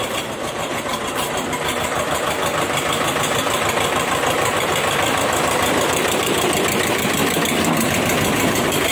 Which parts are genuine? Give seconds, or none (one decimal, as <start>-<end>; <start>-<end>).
7.2-7.9